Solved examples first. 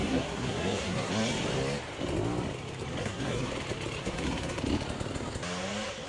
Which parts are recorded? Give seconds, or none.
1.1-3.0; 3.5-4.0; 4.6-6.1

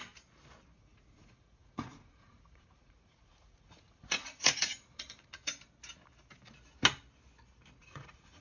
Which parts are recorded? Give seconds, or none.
0.0-0.7; 5.5-7.8

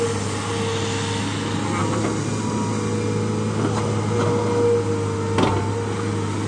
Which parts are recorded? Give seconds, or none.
0.0-6.5

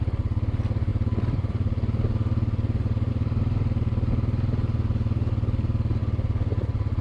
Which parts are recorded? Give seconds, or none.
0.0-0.9; 3.1-6.0